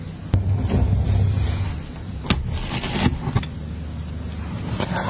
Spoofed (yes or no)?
no